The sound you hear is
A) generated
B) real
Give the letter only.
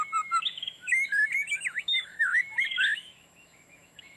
A